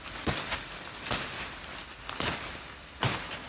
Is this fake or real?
real